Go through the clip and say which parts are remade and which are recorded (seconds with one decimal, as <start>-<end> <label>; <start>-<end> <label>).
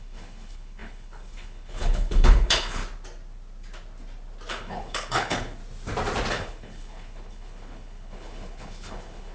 0.0-2.8 remade; 2.8-4.5 recorded; 4.5-5.6 remade; 5.6-6.3 recorded; 6.3-9.3 remade